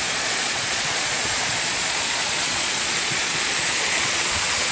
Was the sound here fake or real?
fake